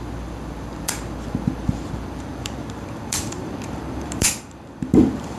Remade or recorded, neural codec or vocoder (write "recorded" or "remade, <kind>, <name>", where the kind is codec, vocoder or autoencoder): remade, vocoder, BigVGAN v2